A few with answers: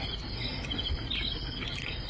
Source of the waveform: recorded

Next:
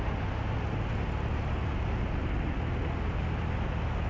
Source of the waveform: recorded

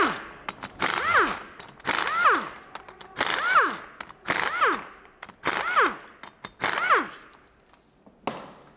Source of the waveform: recorded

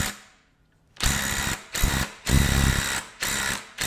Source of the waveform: recorded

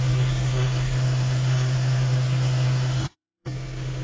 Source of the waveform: remade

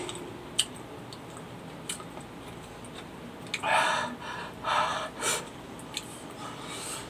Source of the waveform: recorded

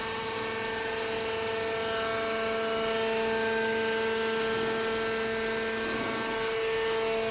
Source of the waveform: recorded